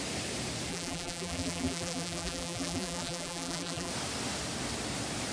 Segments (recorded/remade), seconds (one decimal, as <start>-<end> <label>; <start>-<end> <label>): 0.0-0.7 recorded; 0.7-3.9 remade; 3.9-5.3 recorded